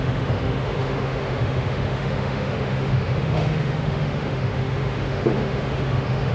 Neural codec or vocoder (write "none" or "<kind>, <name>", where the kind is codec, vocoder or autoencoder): autoencoder, DAC-VAE